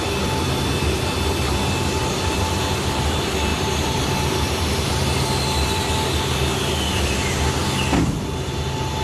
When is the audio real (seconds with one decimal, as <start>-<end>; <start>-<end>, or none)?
0.0-3.5; 4.9-9.0